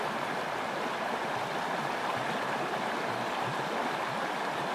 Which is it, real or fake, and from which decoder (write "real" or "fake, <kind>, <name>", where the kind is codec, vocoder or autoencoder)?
real